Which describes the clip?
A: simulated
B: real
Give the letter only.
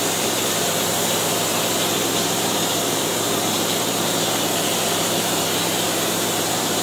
A